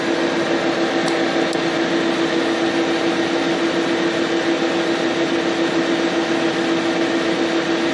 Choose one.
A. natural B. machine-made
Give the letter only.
A